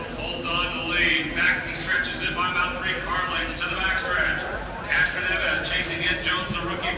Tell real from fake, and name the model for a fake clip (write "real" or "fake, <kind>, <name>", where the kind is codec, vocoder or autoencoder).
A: real